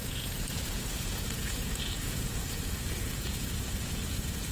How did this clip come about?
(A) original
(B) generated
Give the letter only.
B